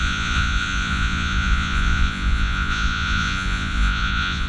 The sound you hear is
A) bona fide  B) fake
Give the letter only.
B